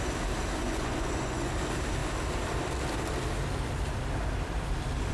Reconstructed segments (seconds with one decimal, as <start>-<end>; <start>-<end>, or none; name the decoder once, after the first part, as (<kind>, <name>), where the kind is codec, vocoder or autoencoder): 0.6-1.5 (vocoder, Vocos)

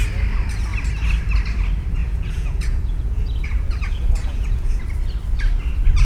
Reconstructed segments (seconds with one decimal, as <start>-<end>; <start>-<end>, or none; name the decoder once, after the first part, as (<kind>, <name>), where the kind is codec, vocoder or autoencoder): 2.0-4.8 (vocoder, Vocos)

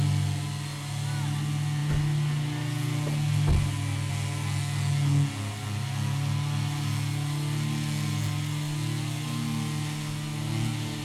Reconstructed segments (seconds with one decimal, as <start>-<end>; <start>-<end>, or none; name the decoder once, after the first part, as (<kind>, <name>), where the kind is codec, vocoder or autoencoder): none

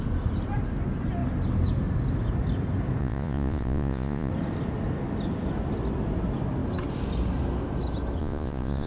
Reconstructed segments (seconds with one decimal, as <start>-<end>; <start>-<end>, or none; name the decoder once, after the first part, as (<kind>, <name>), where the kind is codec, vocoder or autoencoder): 3.0-4.3 (vocoder, Vocos); 8.2-8.9